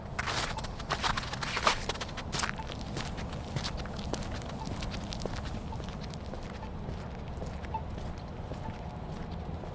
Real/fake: real